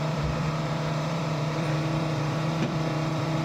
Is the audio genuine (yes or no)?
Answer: no